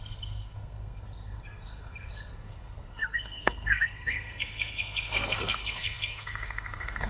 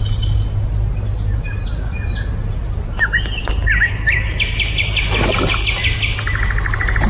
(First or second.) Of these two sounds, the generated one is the first